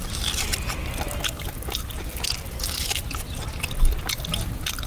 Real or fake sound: real